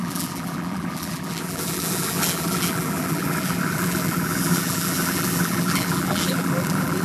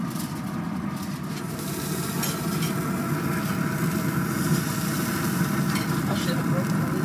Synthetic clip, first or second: first